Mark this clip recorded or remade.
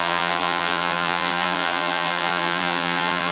remade